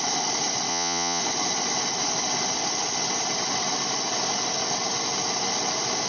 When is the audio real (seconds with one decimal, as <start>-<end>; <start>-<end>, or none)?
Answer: 0.0-0.7; 1.2-6.1